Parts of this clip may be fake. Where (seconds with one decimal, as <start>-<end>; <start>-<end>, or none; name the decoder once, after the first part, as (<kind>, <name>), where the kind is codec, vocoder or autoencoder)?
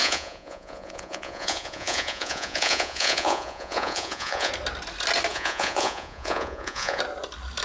0.0-4.5 (vocoder, Vocos); 5.3-7.0